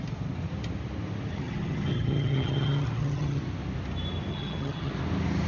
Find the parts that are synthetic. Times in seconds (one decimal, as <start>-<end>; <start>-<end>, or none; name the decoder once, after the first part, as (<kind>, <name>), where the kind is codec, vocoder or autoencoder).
1.3-3.4 (vocoder, HiFi-GAN); 4.3-4.9